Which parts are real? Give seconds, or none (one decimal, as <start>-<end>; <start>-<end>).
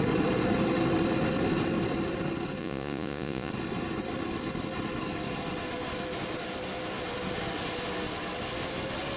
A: 0.0-2.6; 3.5-9.2